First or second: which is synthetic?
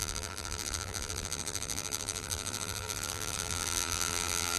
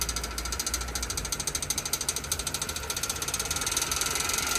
first